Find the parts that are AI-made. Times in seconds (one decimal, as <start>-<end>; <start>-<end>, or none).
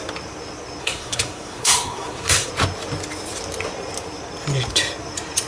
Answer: 0.8-2.5